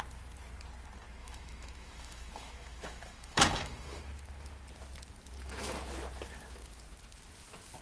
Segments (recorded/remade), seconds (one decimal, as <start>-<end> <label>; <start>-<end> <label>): 0.0-1.2 recorded; 1.2-4.0 remade; 4.0-7.8 recorded